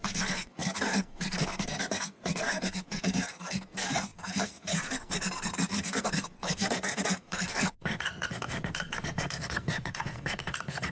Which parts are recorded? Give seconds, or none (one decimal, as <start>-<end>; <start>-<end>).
none